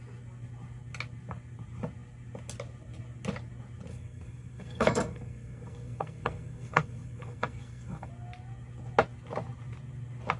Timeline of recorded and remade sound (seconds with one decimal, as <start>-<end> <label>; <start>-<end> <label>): 0.0-3.9 recorded; 3.9-8.1 remade; 8.1-10.4 recorded